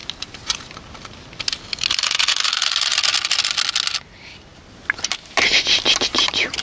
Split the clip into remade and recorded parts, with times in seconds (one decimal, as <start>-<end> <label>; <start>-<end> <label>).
0.0-6.6 recorded